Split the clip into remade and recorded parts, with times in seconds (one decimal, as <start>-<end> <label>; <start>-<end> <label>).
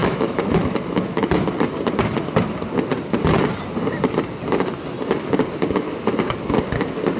0.0-1.3 remade; 1.3-7.2 recorded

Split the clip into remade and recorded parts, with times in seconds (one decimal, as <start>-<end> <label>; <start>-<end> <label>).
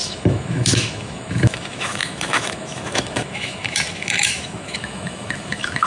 0.0-5.9 remade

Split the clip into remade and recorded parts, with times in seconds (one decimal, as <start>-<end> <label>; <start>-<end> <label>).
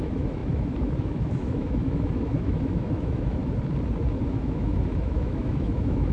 0.0-3.4 remade; 3.4-4.3 recorded; 4.3-6.1 remade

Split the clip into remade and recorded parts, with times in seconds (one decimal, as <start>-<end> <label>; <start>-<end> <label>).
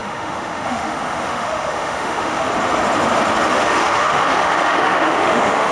0.0-2.5 remade; 2.5-3.5 recorded; 3.5-5.7 remade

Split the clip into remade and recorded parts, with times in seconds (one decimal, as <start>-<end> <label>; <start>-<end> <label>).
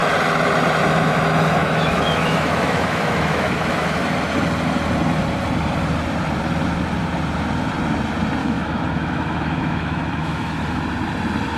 0.0-1.6 recorded; 1.6-4.0 remade; 4.0-8.4 recorded; 8.4-10.8 remade; 10.8-11.6 recorded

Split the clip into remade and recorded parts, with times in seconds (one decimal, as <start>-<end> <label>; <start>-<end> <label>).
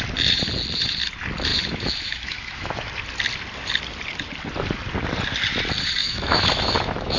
0.0-1.5 recorded; 1.5-2.9 remade; 2.9-6.0 recorded; 6.0-7.2 remade